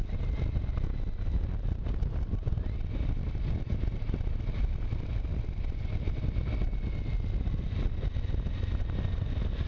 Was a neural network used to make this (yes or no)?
no